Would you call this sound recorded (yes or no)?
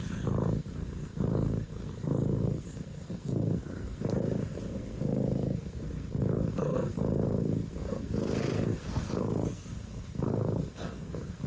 no